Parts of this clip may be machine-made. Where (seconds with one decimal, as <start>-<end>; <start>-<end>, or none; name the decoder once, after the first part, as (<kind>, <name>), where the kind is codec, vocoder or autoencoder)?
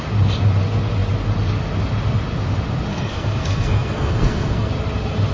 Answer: 2.9-4.7 (codec, SNAC)